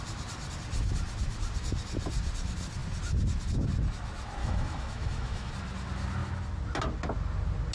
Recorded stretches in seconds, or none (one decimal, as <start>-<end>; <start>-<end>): 0.0-4.4; 5.5-7.7